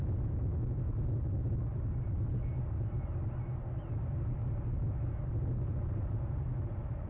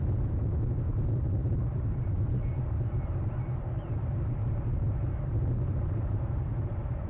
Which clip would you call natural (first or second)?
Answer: first